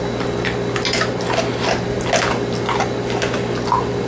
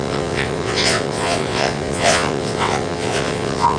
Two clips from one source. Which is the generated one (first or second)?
second